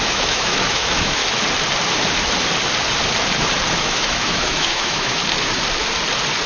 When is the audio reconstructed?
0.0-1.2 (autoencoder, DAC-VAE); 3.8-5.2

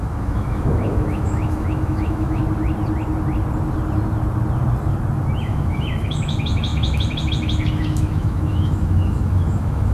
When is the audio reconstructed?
0.0-2.4 (autoencoder, DAC-VAE); 5.4-9.9

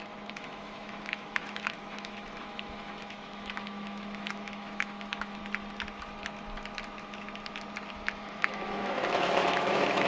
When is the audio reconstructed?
0.0-5.4 (autoencoder, DAC-VAE); 7.9-10.1

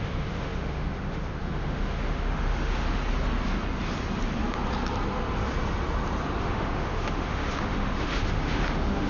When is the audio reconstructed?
0.0-3.0 (autoencoder, DAC-VAE); 6.4-9.1